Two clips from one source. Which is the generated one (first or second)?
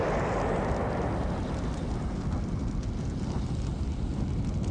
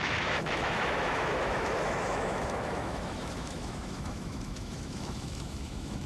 second